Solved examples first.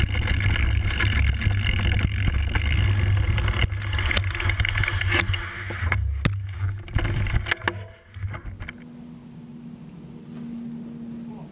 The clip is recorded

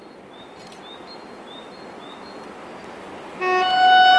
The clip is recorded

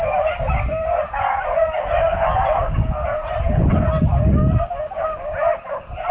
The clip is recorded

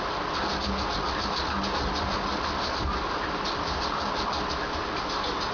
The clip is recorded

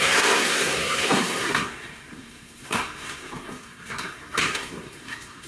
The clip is remade